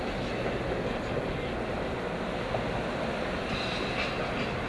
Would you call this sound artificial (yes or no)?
no